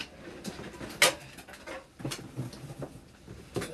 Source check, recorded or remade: recorded